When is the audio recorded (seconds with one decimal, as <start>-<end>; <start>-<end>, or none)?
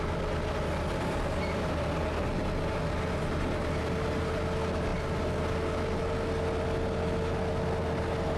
0.0-8.4